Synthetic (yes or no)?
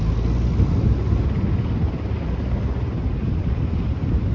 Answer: no